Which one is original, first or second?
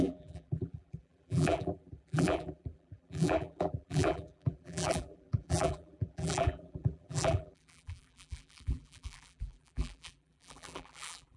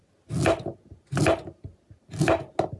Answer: second